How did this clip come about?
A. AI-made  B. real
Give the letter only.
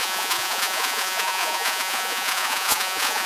A